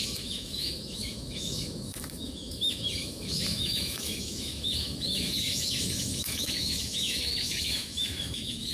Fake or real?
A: fake